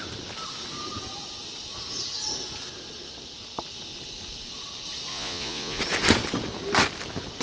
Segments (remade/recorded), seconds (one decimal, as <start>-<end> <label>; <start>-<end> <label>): 0.0-5.1 recorded; 5.1-5.8 remade; 5.8-7.4 recorded